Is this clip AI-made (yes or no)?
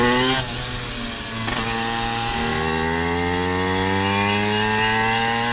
no